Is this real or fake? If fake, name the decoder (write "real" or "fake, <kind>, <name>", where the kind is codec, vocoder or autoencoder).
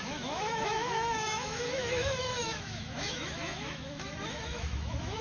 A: fake, autoencoder, DAC-VAE